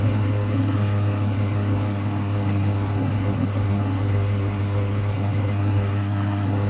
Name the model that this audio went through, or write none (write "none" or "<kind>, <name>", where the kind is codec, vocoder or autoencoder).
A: codec, SNAC